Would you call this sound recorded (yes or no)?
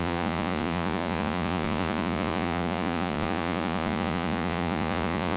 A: no